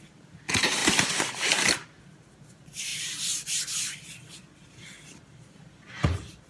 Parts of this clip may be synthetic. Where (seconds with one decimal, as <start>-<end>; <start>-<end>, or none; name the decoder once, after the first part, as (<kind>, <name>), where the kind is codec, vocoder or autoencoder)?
0.0-2.9 (vocoder, BigVGAN v2)